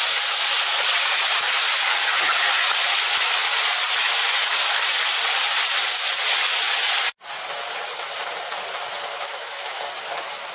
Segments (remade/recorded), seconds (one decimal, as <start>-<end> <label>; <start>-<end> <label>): 0.0-9.1 recorded; 9.1-9.8 remade; 9.8-10.5 recorded